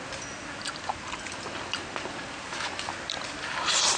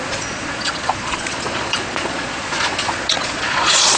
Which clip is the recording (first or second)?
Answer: first